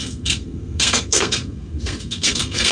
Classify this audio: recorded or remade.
remade